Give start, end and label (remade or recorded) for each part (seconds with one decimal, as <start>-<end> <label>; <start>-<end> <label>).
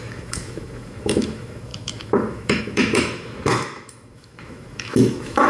0.0-5.5 remade